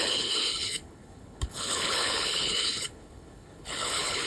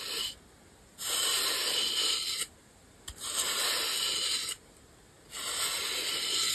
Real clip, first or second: second